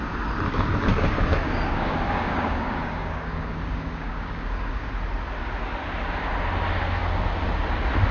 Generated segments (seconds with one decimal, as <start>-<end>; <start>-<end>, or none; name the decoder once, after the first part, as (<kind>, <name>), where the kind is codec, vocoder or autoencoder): 0.9-4.9 (codec, DAC)